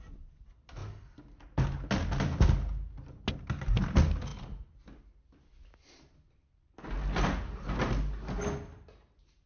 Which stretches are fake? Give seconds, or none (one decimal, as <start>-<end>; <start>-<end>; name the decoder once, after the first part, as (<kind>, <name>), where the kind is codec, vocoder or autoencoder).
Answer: none